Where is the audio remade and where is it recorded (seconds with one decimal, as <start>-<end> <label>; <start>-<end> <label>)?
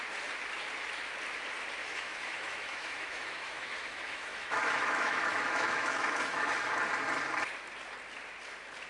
0.0-1.8 recorded; 1.8-6.7 remade; 6.7-8.9 recorded